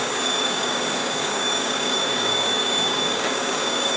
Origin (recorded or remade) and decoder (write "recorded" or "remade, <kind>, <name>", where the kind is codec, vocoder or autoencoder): remade, codec, DAC